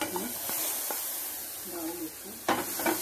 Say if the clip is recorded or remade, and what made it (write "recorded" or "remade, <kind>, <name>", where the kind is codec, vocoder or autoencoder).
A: recorded